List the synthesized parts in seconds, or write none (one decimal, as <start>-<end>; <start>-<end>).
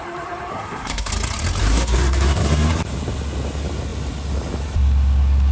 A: 0.5-1.1; 1.6-2.7